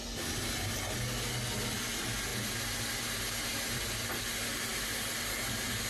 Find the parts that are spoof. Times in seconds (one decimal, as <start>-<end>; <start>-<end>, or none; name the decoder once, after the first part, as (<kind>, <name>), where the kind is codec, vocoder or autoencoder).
none

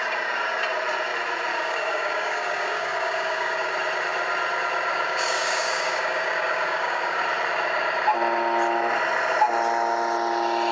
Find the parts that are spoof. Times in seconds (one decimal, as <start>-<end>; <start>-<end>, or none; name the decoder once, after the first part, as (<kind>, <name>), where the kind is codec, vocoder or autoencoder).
1.5-3.7 (codec, DAC); 4.9-7.2

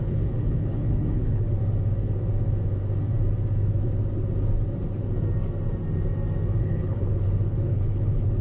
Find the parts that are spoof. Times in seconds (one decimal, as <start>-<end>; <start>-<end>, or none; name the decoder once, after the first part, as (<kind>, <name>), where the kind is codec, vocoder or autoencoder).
0.0-1.6 (codec, HILCodec); 6.6-8.4

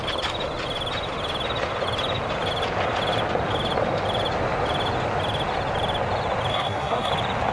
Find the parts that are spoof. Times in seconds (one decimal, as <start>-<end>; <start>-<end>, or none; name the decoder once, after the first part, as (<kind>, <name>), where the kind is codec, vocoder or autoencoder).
6.5-7.1 (codec, SNAC)

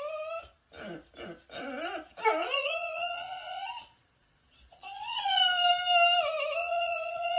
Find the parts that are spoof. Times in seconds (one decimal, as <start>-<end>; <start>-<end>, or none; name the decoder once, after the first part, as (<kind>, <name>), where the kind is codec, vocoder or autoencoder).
2.4-5.4 (vocoder, Vocos); 6.6-7.4

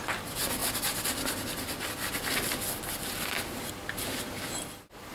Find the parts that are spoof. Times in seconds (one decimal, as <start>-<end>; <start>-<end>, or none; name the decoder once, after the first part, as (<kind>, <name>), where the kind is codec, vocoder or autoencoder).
none

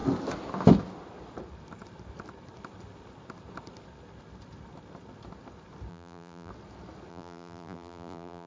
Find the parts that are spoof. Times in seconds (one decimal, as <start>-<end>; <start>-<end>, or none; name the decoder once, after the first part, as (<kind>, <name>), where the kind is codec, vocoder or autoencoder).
5.9-6.5 (vocoder, BigVGAN v2); 7.1-8.5

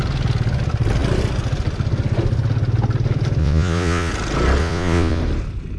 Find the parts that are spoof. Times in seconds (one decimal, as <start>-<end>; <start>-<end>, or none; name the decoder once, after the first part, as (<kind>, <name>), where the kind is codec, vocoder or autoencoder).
3.4-4.1 (vocoder, Vocos); 4.6-5.2